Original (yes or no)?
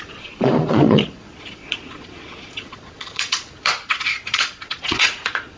no